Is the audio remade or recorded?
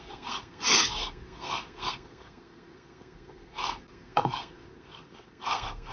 remade